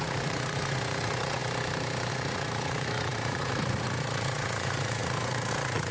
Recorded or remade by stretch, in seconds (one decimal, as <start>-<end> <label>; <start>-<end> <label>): 0.0-1.4 remade; 1.4-2.1 recorded; 2.1-5.9 remade